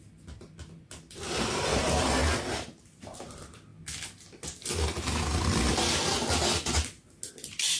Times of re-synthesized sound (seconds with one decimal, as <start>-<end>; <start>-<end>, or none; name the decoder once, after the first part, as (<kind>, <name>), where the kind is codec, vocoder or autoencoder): 0.0-2.2 (vocoder, BigVGAN v2); 2.8-3.7; 7.3-7.8

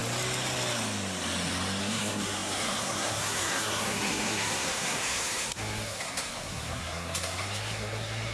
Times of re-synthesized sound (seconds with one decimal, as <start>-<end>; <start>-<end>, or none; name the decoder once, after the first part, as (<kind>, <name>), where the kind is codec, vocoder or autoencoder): 1.8-8.3 (codec, SNAC)